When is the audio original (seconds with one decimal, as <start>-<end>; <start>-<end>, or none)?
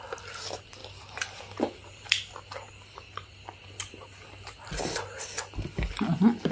0.0-0.8; 1.4-6.5